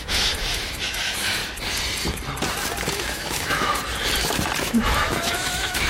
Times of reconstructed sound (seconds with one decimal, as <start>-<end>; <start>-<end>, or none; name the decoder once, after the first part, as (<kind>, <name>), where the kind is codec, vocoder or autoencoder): 0.0-1.4 (autoencoder, DAC-VAE); 2.9-3.7; 4.6-5.9